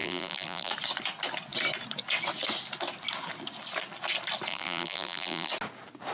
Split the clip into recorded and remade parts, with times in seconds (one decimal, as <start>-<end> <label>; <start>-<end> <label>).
0.0-0.7 remade; 0.7-4.5 recorded; 4.5-5.5 remade; 5.5-6.1 recorded